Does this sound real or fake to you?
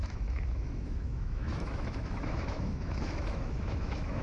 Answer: fake